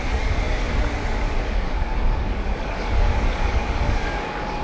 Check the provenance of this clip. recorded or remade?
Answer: remade